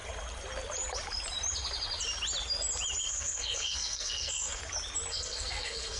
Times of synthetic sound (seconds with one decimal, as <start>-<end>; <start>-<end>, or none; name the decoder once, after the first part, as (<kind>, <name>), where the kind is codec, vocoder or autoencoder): 3.0-4.6 (codec, SNAC); 5.1-6.0